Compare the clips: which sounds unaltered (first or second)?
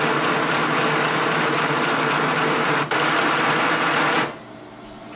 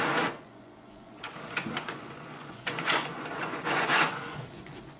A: first